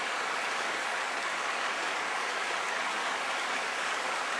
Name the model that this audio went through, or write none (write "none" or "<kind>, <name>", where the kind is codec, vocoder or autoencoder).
codec, DAC